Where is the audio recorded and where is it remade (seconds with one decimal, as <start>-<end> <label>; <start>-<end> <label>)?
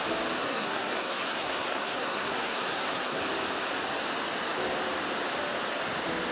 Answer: 0.0-0.4 recorded; 0.4-3.2 remade; 3.2-6.3 recorded